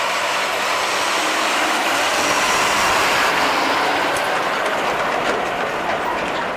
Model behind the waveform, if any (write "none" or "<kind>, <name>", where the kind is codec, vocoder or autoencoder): none